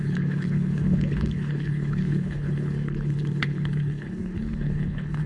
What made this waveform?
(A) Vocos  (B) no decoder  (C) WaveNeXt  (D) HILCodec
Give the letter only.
D